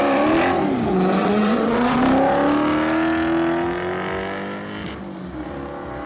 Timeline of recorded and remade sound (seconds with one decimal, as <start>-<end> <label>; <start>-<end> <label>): 0.0-1.2 recorded; 1.2-2.0 remade; 2.0-6.1 recorded